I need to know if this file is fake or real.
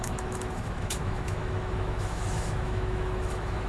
fake